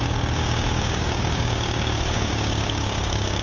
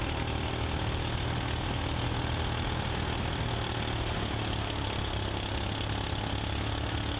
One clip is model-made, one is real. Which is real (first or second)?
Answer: second